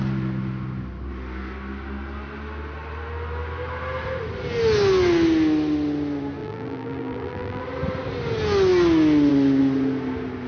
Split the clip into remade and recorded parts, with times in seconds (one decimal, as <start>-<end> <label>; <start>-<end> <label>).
0.0-6.4 recorded; 6.4-7.6 remade; 7.6-10.5 recorded